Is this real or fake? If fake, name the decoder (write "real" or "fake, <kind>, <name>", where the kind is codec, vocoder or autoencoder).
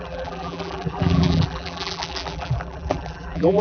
fake, vocoder, BigVGAN v2